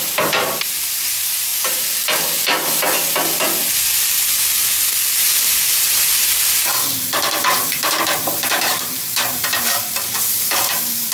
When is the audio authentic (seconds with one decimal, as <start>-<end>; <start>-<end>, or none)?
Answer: 1.5-5.2; 6.6-7.4

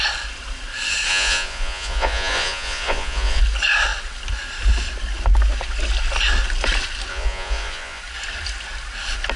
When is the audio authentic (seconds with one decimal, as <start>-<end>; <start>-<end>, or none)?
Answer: 0.0-1.1; 3.4-7.1; 8.0-9.4

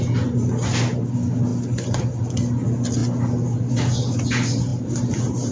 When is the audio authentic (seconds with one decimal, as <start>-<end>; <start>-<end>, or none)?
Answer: 0.0-5.5

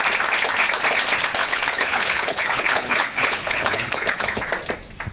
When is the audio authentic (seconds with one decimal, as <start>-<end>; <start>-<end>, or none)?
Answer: 0.0-1.4; 4.5-5.1